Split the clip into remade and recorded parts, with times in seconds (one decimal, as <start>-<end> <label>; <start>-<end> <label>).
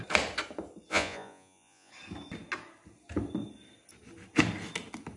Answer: 0.0-0.9 recorded; 0.9-1.9 remade; 1.9-5.2 recorded